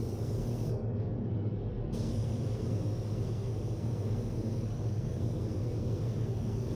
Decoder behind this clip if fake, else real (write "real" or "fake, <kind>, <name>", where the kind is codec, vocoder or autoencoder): fake, codec, SNAC